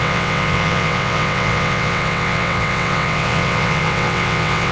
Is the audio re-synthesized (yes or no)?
yes